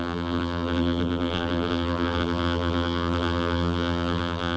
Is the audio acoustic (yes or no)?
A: no